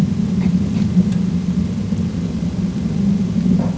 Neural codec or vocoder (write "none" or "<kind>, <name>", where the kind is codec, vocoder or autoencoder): none